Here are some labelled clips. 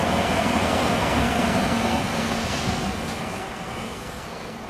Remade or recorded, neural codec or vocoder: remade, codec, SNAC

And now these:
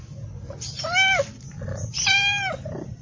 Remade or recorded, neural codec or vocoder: recorded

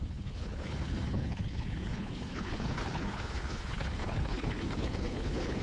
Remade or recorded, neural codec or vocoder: remade, codec, HILCodec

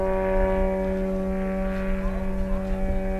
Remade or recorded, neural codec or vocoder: recorded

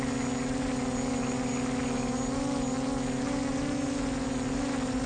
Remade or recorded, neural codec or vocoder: recorded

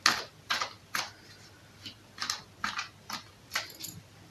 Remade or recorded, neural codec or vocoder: recorded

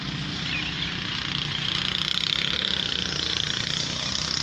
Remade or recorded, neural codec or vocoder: recorded